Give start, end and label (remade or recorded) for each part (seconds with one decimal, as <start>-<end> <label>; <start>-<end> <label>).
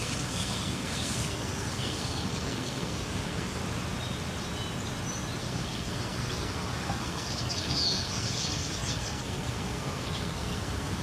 0.0-3.6 remade; 3.6-5.4 recorded; 5.4-11.0 remade